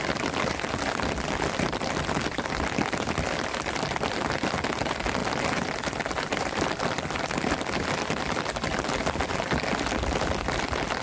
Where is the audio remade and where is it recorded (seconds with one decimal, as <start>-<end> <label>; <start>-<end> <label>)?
0.0-11.0 recorded